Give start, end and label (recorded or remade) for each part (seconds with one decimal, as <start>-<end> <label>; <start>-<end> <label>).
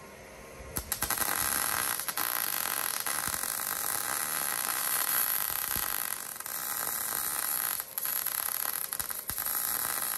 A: 0.0-4.5 recorded; 4.5-5.2 remade; 5.2-10.2 recorded